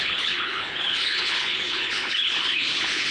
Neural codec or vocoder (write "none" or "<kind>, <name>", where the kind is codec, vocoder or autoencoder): codec, HILCodec